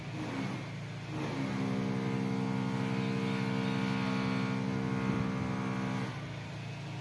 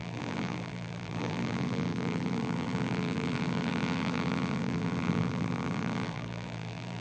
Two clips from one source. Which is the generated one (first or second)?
second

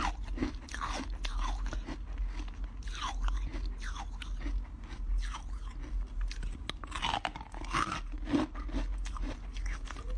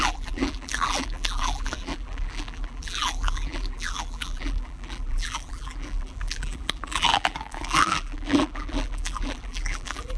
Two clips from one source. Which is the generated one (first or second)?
second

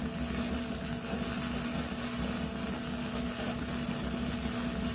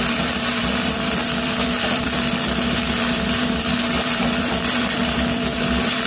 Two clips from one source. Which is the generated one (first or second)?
second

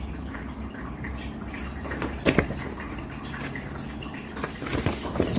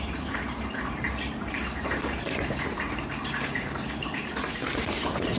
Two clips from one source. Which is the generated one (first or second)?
second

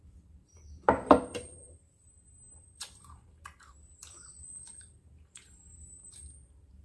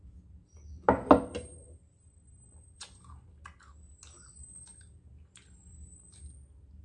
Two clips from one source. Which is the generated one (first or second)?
first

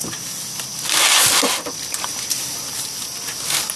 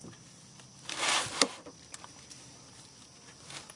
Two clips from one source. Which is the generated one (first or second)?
second